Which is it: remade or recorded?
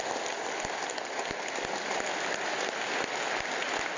recorded